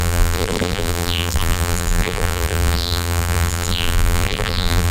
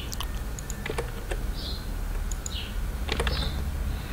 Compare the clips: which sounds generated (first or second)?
first